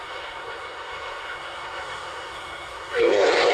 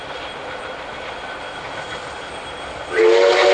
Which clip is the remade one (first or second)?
first